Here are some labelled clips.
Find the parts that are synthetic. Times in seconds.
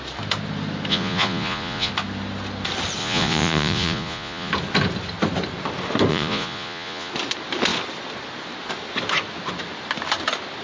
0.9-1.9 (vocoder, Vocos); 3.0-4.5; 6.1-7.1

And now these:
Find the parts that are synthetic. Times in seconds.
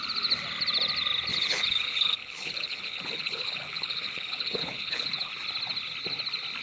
1.3-5.3 (codec, HILCodec)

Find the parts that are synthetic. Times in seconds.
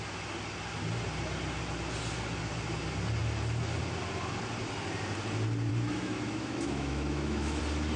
5.7-7.6 (autoencoder, DAC-VAE)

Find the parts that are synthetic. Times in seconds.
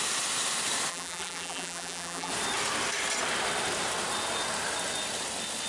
0.9-2.3 (vocoder, BigVGAN v2)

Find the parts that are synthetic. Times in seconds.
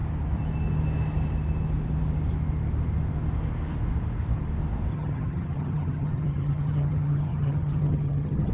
4.9-8.5 (vocoder, HiFi-GAN)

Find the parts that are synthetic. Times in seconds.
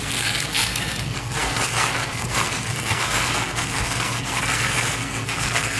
0.0-5.8 (codec, SNAC)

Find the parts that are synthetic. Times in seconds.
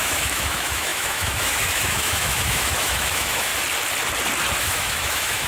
0.0-3.5 (autoencoder, DAC-VAE); 4.6-5.5